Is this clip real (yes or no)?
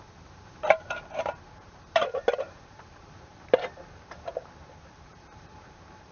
no